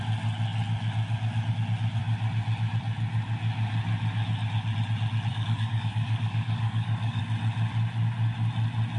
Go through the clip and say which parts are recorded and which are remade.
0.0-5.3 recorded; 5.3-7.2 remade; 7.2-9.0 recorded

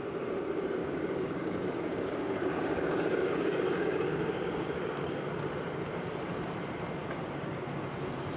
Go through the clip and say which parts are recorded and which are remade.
0.0-0.8 recorded; 0.8-5.3 remade; 5.3-7.0 recorded; 7.0-7.6 remade; 7.6-8.4 recorded

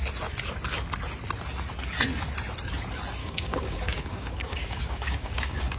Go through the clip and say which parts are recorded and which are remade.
0.0-3.2 recorded; 3.2-5.8 remade

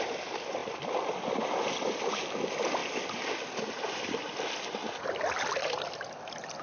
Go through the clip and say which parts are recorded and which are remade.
0.0-6.6 recorded

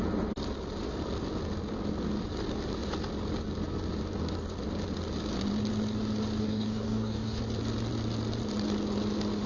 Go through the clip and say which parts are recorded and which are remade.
0.0-6.4 recorded; 6.4-7.4 remade; 7.4-9.5 recorded